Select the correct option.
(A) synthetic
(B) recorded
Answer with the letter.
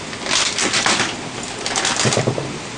B